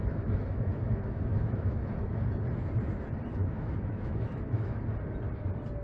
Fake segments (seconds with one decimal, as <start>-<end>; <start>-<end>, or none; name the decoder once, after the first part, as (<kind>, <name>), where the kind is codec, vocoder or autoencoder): 0.0-1.9 (autoencoder, DAC-VAE); 3.4-4.8